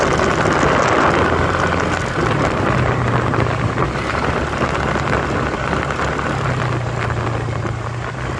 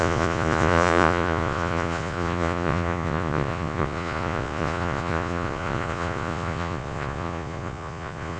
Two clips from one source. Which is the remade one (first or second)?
second